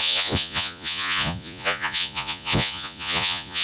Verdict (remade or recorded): remade